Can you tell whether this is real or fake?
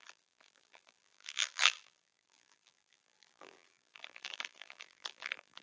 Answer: fake